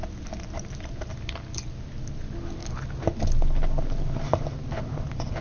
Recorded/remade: recorded